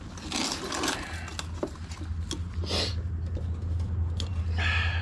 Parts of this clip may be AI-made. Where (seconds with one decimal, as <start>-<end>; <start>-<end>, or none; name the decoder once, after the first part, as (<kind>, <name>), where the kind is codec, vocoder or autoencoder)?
none